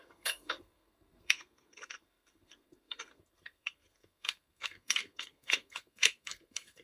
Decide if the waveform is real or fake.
fake